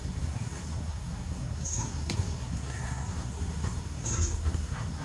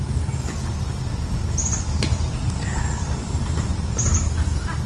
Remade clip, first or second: first